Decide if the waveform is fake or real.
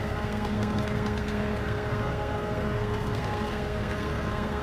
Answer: fake